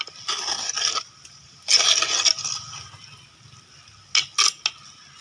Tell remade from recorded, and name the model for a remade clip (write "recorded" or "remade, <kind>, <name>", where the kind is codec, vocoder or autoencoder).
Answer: recorded